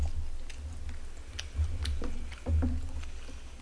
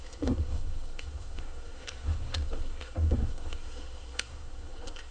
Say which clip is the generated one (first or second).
second